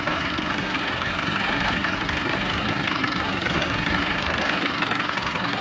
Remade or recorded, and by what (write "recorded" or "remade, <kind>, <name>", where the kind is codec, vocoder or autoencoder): remade, codec, SNAC